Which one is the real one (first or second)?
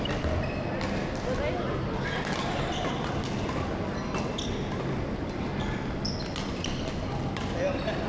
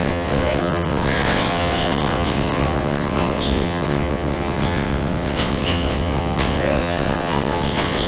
first